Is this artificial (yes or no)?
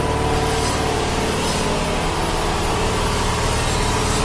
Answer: no